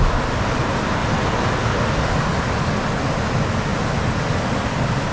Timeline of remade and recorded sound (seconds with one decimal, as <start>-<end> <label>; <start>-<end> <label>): 0.0-5.1 recorded